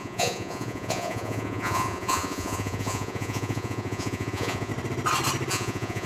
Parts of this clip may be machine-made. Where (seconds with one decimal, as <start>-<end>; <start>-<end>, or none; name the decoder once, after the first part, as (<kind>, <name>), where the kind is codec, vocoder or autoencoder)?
0.0-4.7 (vocoder, Vocos); 5.5-6.1